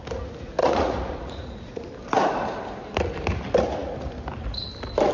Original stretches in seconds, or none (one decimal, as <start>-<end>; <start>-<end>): 0.0-0.6; 1.8-5.1